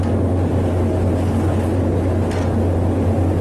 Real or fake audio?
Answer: real